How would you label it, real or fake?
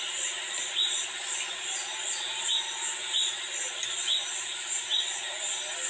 real